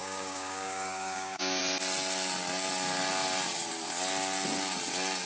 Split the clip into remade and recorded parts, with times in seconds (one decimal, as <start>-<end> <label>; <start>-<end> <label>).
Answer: 0.0-1.6 remade; 1.6-5.3 recorded